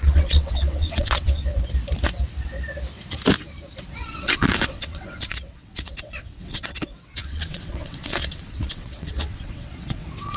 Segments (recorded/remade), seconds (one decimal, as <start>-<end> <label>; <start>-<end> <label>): 0.0-1.4 remade; 1.4-4.0 recorded; 4.0-10.4 remade